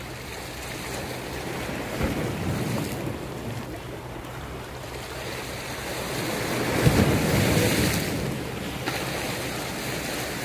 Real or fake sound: real